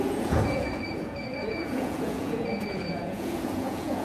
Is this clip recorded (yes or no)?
no